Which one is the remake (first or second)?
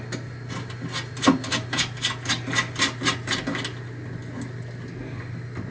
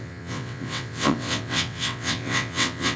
second